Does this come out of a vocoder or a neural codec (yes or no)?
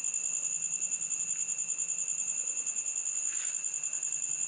no